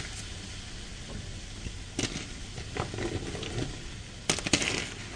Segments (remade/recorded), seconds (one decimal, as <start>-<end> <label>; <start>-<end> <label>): 0.0-5.2 recorded